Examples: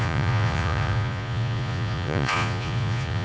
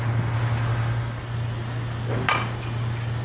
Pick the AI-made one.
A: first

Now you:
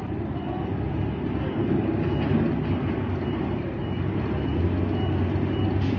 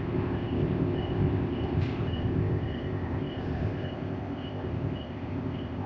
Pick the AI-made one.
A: second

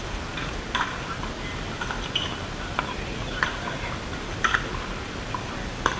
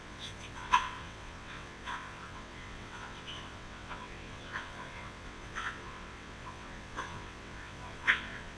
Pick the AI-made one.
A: second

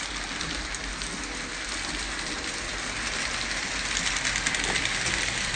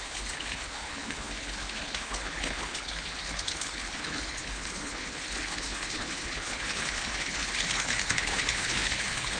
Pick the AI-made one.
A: second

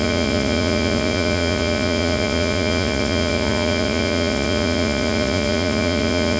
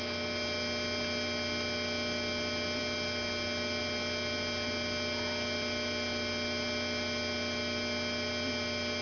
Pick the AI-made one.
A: first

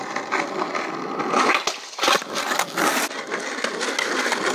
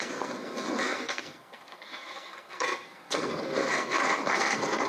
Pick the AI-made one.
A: second